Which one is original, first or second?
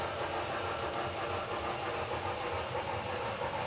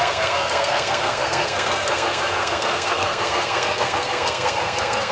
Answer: first